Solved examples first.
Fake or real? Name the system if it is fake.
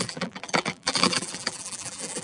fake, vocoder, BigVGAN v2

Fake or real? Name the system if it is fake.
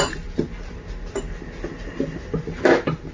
real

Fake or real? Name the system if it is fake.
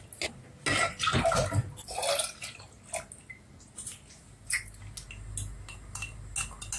real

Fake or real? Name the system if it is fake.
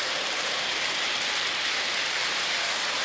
fake, vocoder, BigVGAN v2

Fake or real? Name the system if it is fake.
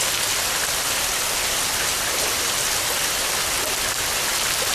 real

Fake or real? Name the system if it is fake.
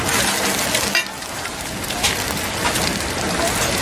real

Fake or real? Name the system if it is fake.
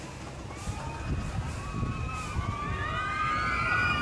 fake, vocoder, BigVGAN v2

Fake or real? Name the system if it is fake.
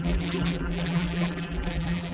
fake, vocoder, BigVGAN v2